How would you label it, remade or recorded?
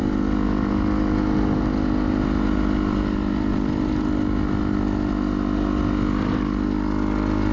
recorded